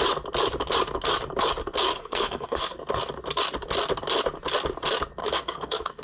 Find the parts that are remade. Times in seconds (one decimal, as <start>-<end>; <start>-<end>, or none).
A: 1.9-2.8; 5.2-6.0